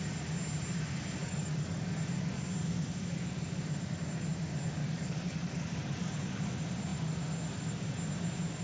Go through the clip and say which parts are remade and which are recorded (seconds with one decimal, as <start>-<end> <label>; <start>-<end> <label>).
0.0-1.2 recorded; 1.2-1.8 remade; 1.8-4.8 recorded; 4.8-6.4 remade; 6.4-8.6 recorded